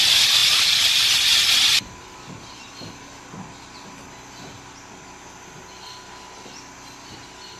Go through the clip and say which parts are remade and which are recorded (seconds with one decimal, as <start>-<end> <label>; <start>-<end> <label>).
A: 0.0-0.4 recorded; 0.4-1.0 remade; 1.0-7.6 recorded